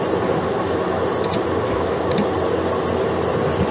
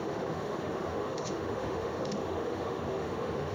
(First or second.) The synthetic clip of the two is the second